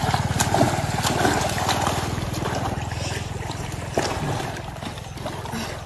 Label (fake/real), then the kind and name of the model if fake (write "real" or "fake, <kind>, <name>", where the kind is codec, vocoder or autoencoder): real